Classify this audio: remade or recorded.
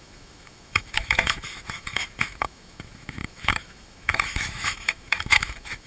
remade